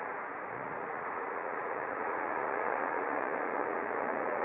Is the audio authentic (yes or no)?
no